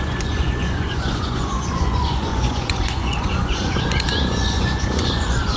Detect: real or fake fake